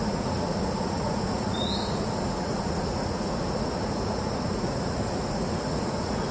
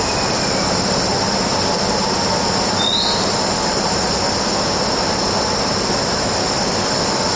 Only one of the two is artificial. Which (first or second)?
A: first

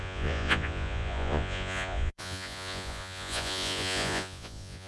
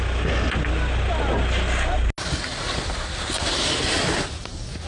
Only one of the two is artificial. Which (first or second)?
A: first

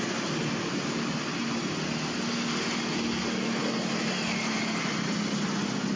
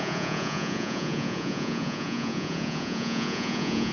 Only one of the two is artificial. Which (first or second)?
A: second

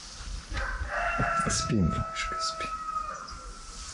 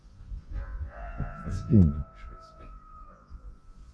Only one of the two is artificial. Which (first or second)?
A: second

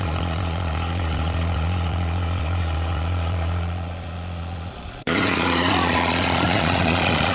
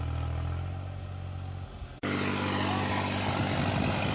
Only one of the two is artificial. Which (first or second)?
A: first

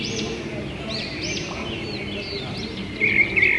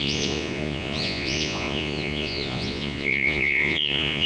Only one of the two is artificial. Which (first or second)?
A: second